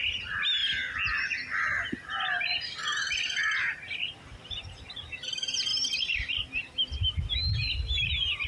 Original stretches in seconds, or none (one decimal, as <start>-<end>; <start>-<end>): 0.0-8.5